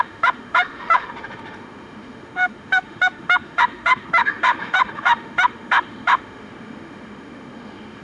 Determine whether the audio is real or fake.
fake